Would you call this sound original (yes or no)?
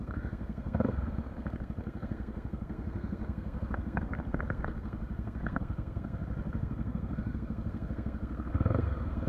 no